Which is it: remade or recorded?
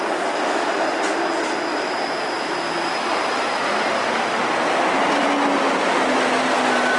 recorded